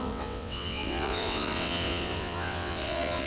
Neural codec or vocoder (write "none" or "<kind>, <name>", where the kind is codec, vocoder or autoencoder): vocoder, WaveNeXt